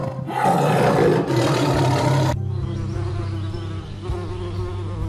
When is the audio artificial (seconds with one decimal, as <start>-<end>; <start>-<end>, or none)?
none